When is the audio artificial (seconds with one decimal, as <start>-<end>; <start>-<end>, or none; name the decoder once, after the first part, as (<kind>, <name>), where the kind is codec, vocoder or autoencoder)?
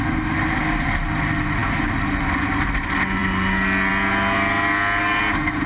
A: none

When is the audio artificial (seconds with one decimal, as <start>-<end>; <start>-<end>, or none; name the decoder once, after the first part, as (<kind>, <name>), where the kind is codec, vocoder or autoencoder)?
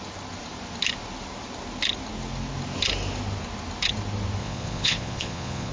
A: 4.4-5.7 (vocoder, Vocos)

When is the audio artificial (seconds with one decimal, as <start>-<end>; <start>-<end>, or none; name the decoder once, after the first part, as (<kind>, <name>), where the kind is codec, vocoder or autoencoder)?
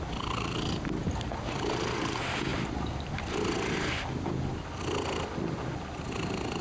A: none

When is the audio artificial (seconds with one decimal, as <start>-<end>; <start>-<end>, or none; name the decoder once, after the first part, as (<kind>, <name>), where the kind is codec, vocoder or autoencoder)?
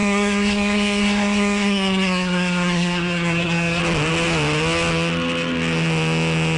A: 0.0-3.8 (codec, SNAC)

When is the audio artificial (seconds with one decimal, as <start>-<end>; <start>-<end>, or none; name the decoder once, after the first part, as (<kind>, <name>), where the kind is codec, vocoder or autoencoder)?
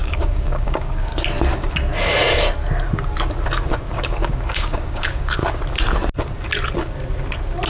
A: 0.0-1.1 (codec, DAC); 3.7-5.4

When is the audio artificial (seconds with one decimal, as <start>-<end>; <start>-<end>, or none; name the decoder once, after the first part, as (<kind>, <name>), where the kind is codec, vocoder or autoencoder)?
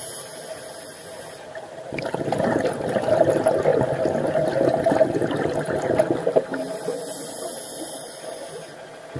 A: none